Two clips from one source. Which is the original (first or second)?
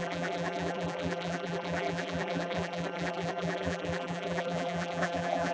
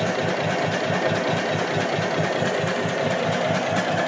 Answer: second